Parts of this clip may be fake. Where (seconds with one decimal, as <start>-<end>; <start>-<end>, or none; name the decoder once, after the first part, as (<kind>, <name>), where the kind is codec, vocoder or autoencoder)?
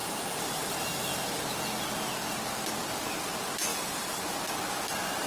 0.0-1.4 (vocoder, BigVGAN v2); 3.7-4.2